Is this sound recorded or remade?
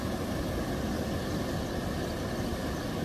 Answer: recorded